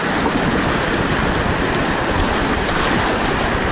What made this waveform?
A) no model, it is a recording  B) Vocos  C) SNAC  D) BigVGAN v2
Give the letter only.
A